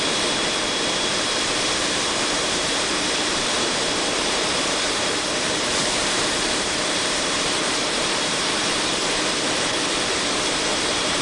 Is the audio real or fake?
fake